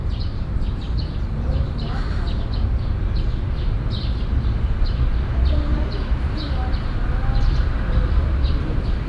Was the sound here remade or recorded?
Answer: remade